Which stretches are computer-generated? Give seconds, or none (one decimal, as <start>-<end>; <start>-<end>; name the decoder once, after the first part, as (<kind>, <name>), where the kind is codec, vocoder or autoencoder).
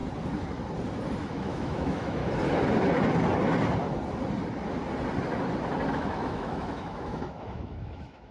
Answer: 1.3-2.2 (autoencoder, DAC-VAE); 5.9-8.3